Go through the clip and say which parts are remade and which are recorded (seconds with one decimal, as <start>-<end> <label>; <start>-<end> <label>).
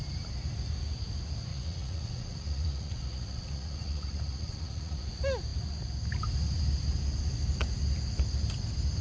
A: 0.0-1.5 recorded; 1.5-5.1 remade; 5.1-9.0 recorded